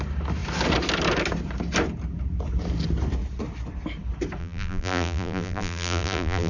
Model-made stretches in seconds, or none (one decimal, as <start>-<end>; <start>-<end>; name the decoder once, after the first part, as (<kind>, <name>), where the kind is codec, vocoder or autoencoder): 4.4-6.5 (vocoder, BigVGAN v2)